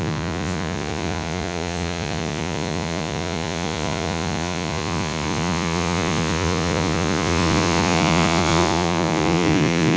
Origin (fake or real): fake